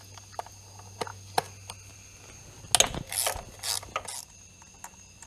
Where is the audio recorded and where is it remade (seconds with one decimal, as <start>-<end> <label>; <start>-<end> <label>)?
0.0-5.3 recorded